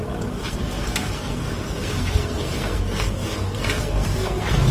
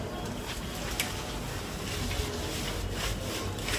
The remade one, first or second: first